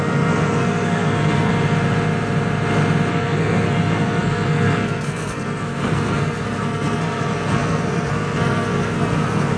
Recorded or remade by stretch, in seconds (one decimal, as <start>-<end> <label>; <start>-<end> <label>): 0.0-1.5 remade; 1.5-3.1 recorded; 3.1-9.6 remade